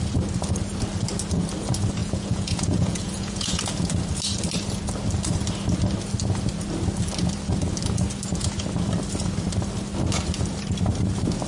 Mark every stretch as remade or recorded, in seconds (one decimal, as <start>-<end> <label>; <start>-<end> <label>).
0.0-2.0 recorded; 2.0-3.6 remade; 3.6-11.5 recorded